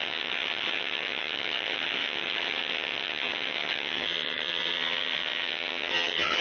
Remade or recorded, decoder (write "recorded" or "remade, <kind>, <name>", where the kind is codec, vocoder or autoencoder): remade, vocoder, HiFi-GAN